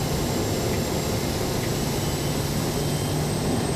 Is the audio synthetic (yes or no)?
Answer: no